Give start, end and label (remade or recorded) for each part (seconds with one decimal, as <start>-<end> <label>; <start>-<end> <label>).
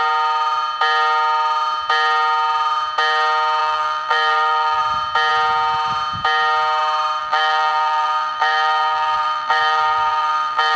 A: 0.0-3.6 recorded; 3.6-4.8 remade; 4.8-7.2 recorded; 7.2-10.8 remade